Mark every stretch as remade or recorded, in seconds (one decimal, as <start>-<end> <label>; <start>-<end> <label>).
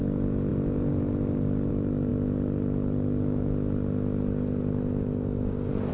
0.0-5.9 recorded